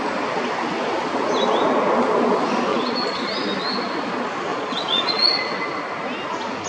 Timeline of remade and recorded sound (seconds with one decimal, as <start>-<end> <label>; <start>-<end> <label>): 0.0-2.7 recorded; 2.7-3.2 remade; 3.2-4.5 recorded; 4.5-5.4 remade; 5.4-6.7 recorded